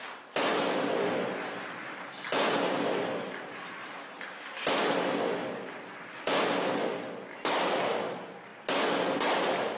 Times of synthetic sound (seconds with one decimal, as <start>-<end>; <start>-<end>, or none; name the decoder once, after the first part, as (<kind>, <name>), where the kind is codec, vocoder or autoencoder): none